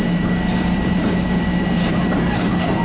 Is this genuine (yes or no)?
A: no